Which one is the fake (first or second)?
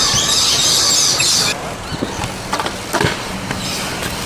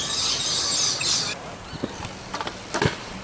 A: second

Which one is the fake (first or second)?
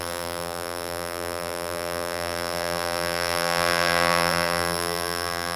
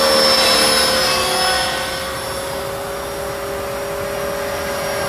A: first